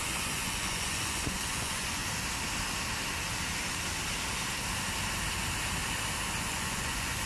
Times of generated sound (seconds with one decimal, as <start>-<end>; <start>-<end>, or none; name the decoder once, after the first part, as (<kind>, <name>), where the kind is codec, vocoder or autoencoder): 0.0-2.0 (vocoder, Vocos); 6.4-7.3